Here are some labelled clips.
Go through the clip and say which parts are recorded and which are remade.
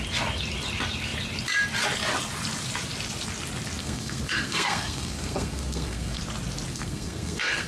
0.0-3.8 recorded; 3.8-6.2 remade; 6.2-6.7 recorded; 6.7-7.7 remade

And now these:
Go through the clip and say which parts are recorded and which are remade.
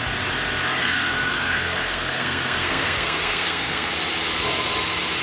0.0-0.8 recorded; 0.8-3.9 remade; 3.9-5.2 recorded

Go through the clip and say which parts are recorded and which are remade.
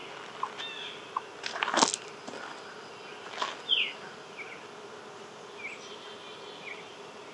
0.0-7.3 recorded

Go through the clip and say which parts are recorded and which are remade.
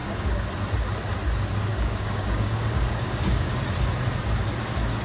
0.0-0.5 remade; 0.5-1.7 recorded; 1.7-3.5 remade; 3.5-5.0 recorded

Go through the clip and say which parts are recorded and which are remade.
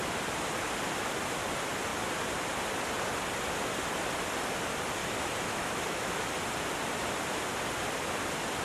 0.0-5.0 recorded; 5.0-6.3 remade; 6.3-8.6 recorded